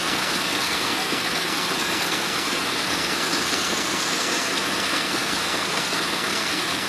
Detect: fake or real fake